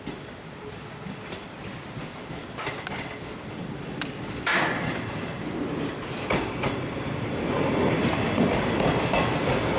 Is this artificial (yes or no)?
no